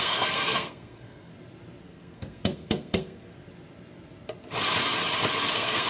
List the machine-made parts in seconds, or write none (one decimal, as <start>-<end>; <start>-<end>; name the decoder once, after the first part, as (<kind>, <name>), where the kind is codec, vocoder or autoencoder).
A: 0.0-1.3 (codec, SNAC); 1.8-3.5; 5.5-5.9